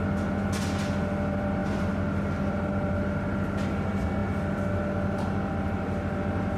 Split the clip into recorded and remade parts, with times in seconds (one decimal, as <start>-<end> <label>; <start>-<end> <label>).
0.0-6.6 recorded

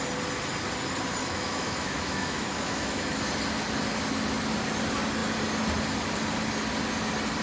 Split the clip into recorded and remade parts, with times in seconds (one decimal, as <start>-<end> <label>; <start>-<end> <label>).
0.0-1.2 recorded; 1.2-3.2 remade; 3.2-7.4 recorded